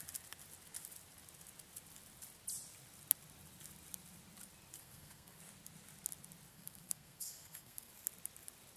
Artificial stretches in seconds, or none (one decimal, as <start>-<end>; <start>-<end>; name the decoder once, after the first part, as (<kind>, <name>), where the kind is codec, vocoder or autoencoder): 4.8-5.4 (codec, SNAC); 6.5-7.9